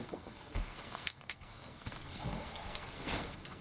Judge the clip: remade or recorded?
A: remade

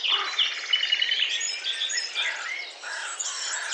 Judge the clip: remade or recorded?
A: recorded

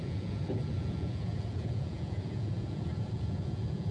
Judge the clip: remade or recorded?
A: remade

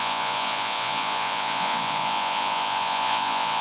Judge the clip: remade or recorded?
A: remade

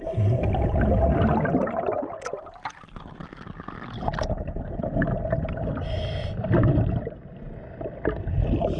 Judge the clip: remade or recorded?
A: recorded